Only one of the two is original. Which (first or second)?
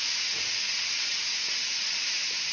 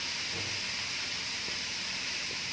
second